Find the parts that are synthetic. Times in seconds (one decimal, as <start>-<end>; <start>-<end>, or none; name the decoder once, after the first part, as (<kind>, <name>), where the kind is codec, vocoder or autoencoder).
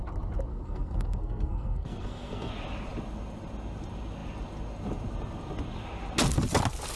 0.5-2.5 (codec, SNAC)